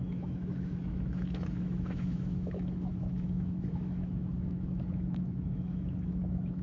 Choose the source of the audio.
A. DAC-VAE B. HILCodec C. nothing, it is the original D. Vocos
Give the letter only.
A